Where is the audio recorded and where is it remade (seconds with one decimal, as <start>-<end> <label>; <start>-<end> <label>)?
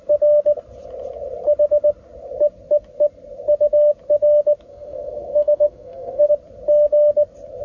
0.0-4.7 recorded; 4.7-6.3 remade; 6.3-7.6 recorded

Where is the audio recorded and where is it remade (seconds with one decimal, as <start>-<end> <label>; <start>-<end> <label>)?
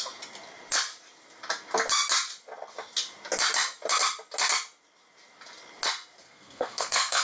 0.0-6.2 recorded; 6.2-7.2 remade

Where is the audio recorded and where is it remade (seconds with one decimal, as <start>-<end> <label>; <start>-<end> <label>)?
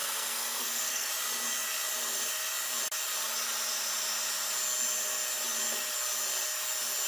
0.0-1.1 remade; 1.1-7.1 recorded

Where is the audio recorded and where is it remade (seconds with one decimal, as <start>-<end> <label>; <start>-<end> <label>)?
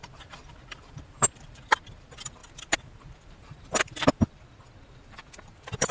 0.0-2.4 remade; 2.4-3.0 recorded; 3.0-5.9 remade